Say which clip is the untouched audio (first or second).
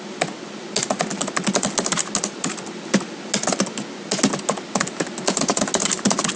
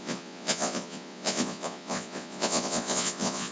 first